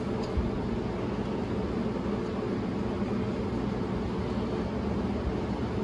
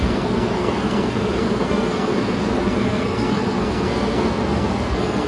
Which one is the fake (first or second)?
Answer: second